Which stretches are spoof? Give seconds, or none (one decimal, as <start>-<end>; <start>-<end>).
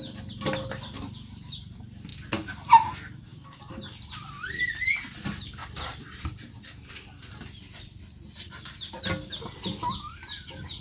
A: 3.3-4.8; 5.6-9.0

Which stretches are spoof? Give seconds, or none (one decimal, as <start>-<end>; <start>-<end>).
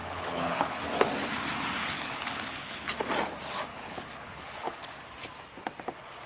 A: 0.0-0.8; 1.8-2.9; 3.7-5.0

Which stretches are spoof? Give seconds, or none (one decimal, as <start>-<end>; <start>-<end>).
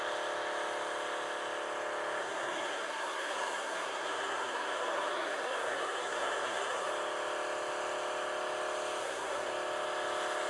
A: 2.2-6.9; 9.0-9.5